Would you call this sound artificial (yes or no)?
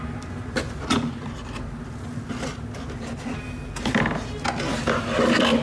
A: no